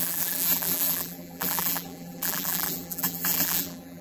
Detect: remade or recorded remade